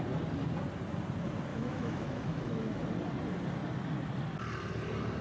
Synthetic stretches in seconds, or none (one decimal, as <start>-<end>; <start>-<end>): 1.5-2.8